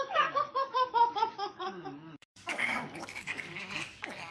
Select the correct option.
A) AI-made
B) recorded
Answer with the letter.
A